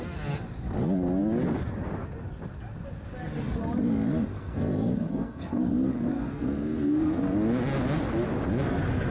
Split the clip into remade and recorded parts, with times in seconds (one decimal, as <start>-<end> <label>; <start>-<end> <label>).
0.0-4.3 recorded; 4.3-5.6 remade; 5.6-6.1 recorded; 6.1-7.2 remade; 7.2-9.1 recorded